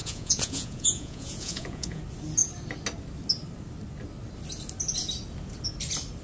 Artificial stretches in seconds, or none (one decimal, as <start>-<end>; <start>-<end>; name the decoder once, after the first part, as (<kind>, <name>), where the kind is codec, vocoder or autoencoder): 0.0-2.0 (vocoder, Vocos)